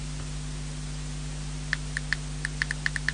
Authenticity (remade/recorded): recorded